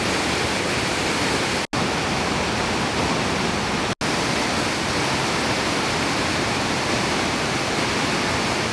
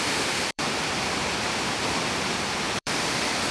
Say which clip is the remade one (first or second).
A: second